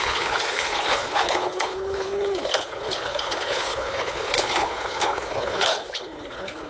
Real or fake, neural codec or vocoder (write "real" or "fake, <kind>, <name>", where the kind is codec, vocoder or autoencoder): fake, codec, HILCodec